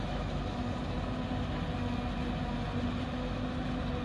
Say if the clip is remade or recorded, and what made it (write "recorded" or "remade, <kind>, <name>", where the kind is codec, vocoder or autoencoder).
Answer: recorded